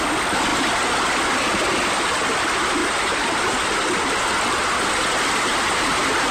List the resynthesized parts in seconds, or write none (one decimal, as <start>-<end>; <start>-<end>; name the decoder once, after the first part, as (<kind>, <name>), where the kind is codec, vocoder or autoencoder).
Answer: none